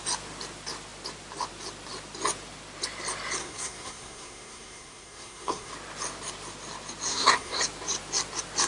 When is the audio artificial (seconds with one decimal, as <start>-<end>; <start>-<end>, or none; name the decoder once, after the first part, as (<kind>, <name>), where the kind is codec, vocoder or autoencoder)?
3.4-5.7 (codec, SNAC); 7.1-7.6